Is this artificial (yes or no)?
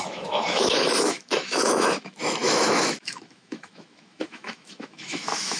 yes